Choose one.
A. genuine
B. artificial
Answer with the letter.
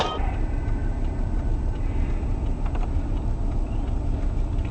A